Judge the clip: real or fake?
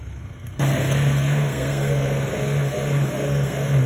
fake